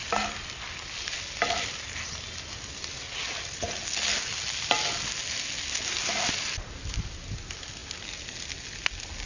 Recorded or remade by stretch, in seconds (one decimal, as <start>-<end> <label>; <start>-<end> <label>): 0.0-9.3 recorded